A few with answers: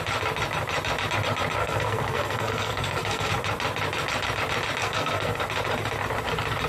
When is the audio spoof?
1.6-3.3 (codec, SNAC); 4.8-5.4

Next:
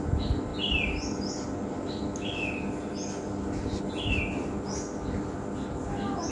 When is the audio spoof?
none

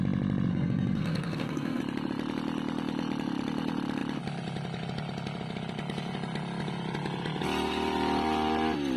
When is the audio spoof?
0.5-1.8 (codec, SNAC)

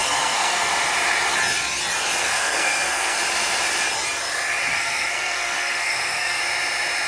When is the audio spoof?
0.0-0.7 (codec, SNAC); 2.2-3.2; 4.7-6.4

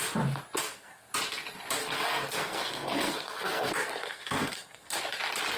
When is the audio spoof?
0.6-1.1 (codec, SNAC); 1.8-5.0